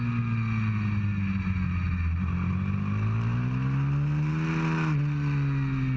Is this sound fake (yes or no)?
no